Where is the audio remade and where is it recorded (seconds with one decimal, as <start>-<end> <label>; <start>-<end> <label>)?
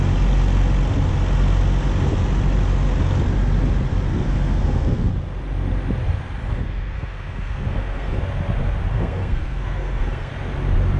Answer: 0.0-4.1 recorded; 4.1-5.1 remade; 5.1-6.4 recorded; 6.4-8.2 remade; 8.2-8.9 recorded; 8.9-10.3 remade; 10.3-11.0 recorded